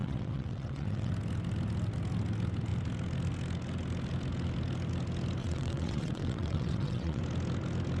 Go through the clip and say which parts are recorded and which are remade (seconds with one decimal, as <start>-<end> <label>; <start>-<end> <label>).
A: 0.0-1.1 remade; 1.1-5.4 recorded; 5.4-7.2 remade; 7.2-8.0 recorded